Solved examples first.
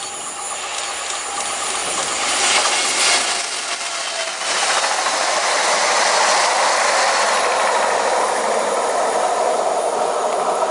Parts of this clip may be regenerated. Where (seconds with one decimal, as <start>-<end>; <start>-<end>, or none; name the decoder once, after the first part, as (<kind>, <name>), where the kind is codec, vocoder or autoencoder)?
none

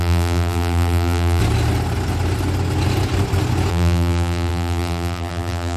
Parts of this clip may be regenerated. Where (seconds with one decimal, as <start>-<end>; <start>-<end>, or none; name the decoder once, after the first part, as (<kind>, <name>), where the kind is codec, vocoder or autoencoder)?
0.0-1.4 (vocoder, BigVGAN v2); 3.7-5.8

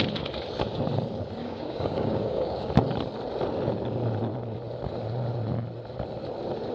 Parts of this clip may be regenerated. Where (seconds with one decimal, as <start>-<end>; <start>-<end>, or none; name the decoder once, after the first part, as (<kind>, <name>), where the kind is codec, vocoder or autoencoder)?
1.4-2.7 (codec, DAC)

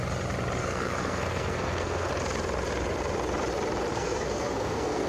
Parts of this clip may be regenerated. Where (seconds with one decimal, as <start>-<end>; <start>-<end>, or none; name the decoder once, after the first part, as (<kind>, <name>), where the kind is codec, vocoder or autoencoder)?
0.6-2.1 (codec, SNAC); 3.9-5.1

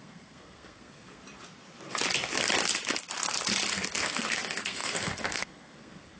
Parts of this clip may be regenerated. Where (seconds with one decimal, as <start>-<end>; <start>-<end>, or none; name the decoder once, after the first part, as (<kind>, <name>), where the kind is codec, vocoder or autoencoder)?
0.0-1.2 (codec, SNAC); 4.0-6.2

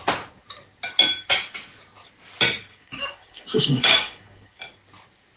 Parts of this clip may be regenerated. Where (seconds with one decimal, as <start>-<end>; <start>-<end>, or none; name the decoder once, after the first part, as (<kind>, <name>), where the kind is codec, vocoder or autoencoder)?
2.7-4.6 (codec, DAC)